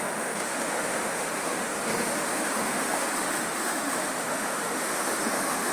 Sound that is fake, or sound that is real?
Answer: fake